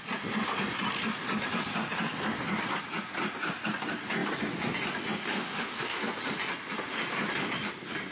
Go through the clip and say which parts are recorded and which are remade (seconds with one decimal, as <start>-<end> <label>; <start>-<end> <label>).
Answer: 0.0-5.2 recorded; 5.2-6.0 remade; 6.0-8.1 recorded

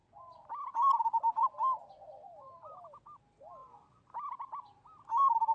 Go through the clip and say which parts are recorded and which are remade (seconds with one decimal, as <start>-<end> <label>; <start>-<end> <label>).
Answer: 0.0-5.5 recorded

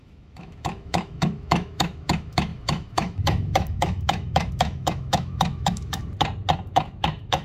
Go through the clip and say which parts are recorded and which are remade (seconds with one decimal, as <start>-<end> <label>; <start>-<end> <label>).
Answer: 0.0-6.0 remade; 6.0-6.7 recorded; 6.7-7.4 remade

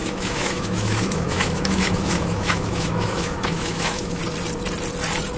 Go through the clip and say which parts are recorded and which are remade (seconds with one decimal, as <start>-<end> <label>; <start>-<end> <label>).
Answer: 0.0-4.2 remade; 4.2-5.4 recorded